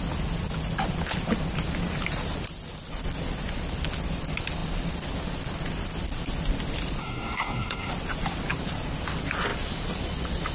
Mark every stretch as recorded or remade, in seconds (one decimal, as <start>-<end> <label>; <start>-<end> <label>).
0.0-7.0 recorded; 7.0-7.9 remade; 7.9-10.5 recorded